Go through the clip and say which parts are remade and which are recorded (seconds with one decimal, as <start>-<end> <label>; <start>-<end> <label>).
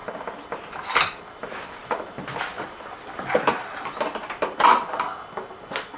0.0-6.0 recorded